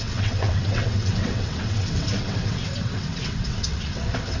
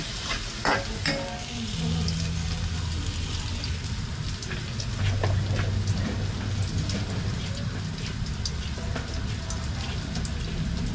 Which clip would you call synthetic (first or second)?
first